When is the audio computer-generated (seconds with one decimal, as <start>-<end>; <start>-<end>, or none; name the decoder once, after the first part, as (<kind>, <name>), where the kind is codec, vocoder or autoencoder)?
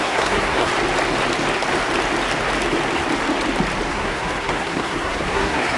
0.0-0.7 (codec, SNAC); 3.9-5.8